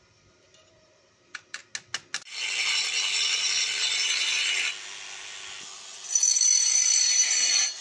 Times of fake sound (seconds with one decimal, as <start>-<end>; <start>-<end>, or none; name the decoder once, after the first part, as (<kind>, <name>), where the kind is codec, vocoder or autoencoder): 0.0-1.6 (vocoder, BigVGAN v2); 6.3-7.8